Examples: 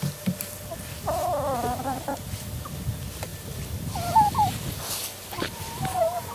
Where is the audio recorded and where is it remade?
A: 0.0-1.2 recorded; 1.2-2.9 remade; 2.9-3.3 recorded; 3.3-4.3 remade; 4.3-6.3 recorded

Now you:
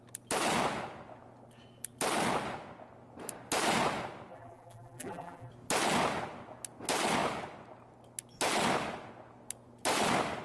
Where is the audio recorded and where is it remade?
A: 0.0-4.3 recorded; 4.3-5.5 remade; 5.5-10.4 recorded

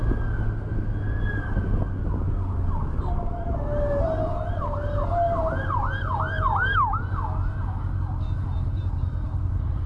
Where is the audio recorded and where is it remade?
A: 0.0-9.9 recorded

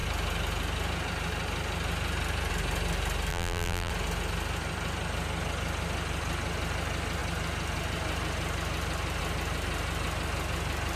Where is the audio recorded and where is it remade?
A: 0.0-3.3 recorded; 3.3-3.9 remade; 3.9-11.0 recorded

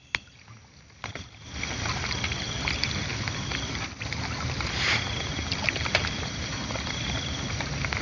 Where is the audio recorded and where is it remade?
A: 0.0-8.0 recorded

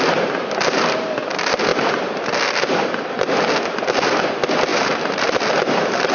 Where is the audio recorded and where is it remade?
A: 0.0-4.7 recorded; 4.7-5.3 remade; 5.3-6.1 recorded

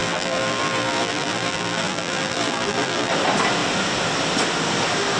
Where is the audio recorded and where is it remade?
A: 0.0-3.1 remade; 3.1-5.2 recorded

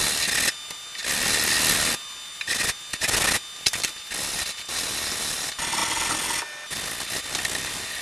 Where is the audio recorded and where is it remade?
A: 0.0-8.0 recorded